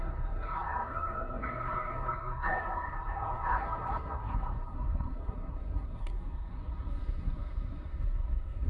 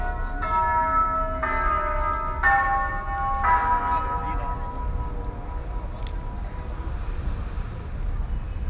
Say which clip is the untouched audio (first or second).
second